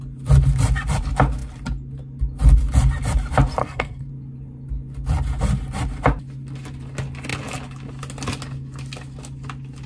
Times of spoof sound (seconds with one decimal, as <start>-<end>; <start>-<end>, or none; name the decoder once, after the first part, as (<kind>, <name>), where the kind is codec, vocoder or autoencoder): 3.6-4.1 (codec, SNAC)